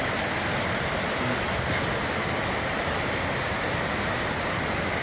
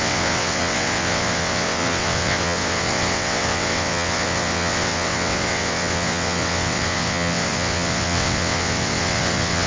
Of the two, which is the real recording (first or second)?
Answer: first